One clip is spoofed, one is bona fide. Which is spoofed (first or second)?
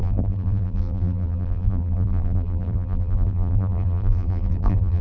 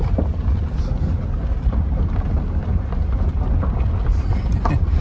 first